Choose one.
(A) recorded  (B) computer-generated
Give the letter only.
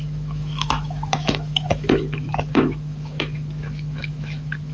B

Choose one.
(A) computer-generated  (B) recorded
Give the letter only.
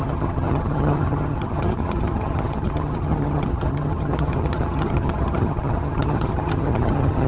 A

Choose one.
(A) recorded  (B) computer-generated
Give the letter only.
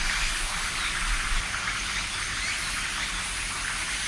A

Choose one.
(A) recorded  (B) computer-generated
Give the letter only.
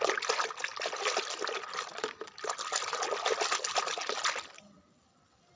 A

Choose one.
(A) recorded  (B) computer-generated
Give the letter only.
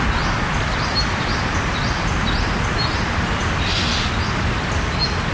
A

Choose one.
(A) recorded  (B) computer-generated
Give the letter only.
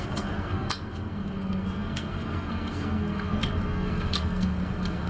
B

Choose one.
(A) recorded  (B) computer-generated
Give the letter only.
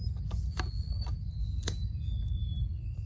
A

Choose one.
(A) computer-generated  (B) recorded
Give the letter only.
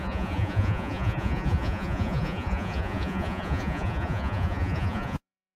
A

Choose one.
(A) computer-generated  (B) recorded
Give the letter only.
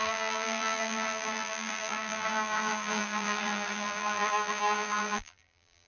A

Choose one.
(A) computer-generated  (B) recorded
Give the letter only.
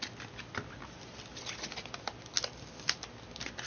B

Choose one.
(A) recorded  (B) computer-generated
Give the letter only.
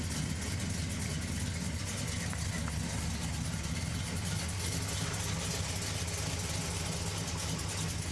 A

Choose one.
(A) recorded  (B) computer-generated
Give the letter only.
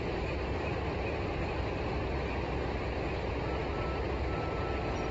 A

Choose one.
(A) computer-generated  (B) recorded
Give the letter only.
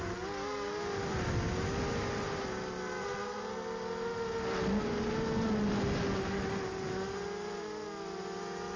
B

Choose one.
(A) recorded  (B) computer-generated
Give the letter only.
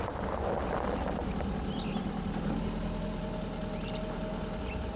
B